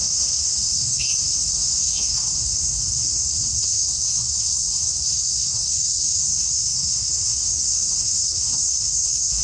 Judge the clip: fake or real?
fake